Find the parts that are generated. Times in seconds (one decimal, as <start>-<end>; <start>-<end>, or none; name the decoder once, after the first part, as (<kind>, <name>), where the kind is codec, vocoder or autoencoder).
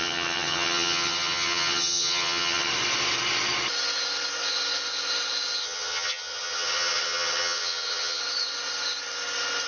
0.0-2.7 (vocoder, HiFi-GAN); 5.6-8.2